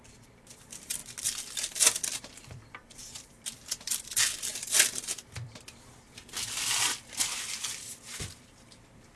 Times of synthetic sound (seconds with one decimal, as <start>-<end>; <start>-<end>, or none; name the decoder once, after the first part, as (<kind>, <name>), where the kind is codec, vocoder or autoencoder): 0.0-1.0 (vocoder, BigVGAN v2); 2.1-9.2